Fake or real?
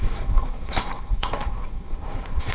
fake